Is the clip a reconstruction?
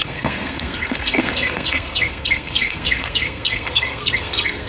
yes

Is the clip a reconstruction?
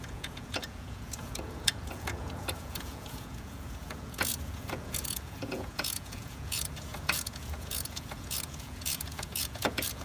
yes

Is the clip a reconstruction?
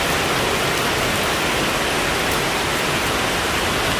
no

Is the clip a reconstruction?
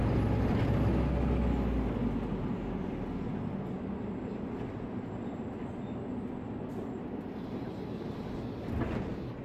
no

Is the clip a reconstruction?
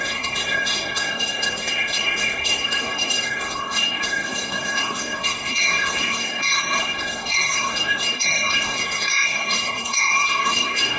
yes